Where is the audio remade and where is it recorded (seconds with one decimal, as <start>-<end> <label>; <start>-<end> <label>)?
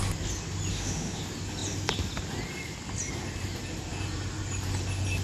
0.0-0.7 recorded; 0.7-1.2 remade; 1.2-5.2 recorded